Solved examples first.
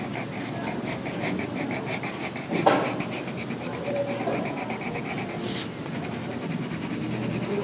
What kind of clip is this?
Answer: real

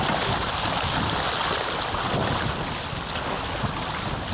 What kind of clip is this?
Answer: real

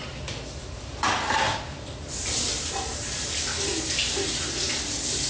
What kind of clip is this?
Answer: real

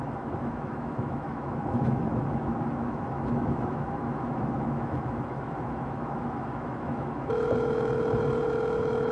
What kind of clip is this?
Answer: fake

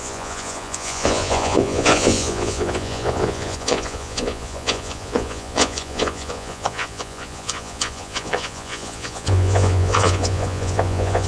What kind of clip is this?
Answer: fake